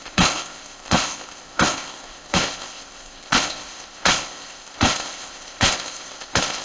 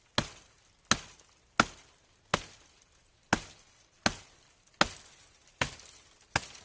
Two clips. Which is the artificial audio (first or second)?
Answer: first